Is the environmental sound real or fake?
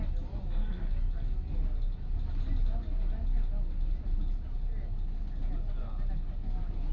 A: real